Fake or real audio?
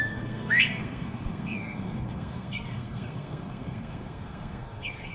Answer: fake